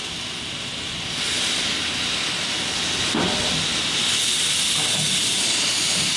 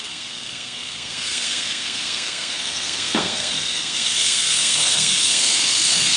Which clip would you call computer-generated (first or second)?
second